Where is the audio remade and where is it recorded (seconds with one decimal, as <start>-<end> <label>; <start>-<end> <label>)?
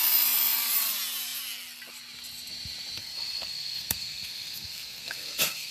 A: 0.0-3.0 recorded; 3.0-5.7 remade